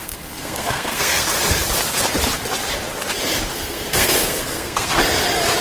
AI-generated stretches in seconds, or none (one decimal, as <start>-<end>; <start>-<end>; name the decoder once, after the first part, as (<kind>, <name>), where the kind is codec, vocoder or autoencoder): 0.0-1.3 (codec, SNAC); 3.5-4.9